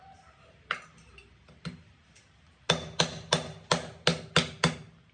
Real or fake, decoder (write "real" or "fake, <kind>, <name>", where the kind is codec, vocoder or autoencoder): real